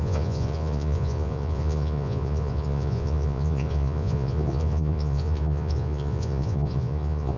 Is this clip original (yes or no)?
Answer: no